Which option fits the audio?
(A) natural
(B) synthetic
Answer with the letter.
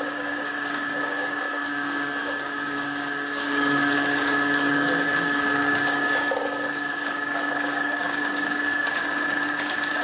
B